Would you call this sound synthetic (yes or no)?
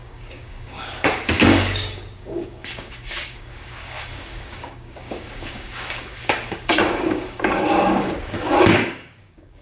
yes